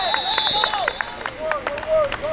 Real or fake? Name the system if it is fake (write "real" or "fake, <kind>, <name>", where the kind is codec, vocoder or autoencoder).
real